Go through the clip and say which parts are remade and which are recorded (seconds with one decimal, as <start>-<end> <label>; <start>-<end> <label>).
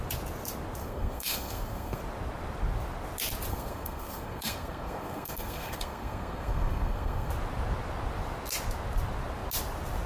0.0-0.8 recorded; 0.8-2.0 remade; 2.0-3.5 recorded; 3.5-7.3 remade; 7.3-10.1 recorded